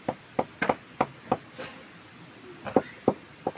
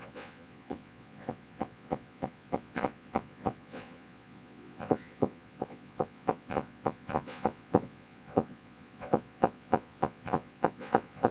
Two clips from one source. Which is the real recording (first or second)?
first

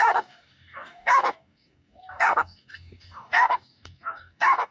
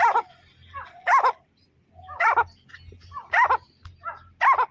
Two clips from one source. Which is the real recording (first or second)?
second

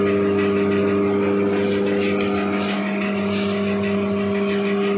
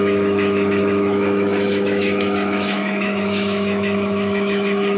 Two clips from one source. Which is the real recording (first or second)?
first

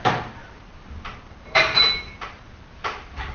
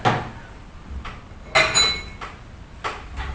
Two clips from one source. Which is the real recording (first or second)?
second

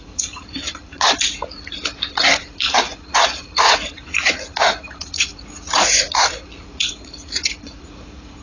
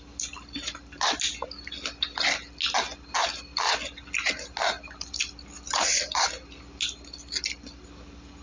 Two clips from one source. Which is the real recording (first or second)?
second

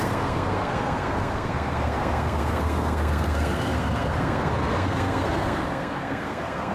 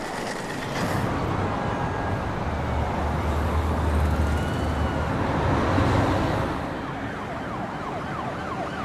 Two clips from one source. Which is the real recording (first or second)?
second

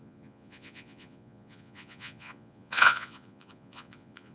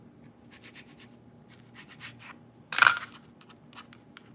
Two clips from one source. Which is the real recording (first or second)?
second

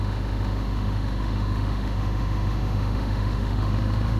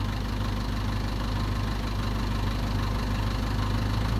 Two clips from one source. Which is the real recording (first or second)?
second